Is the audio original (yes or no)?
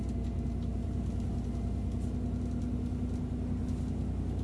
yes